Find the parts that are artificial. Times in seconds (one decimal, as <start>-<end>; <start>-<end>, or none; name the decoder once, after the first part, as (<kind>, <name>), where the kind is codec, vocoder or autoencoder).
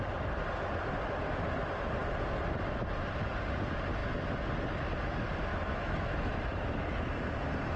5.5-7.1 (autoencoder, DAC-VAE)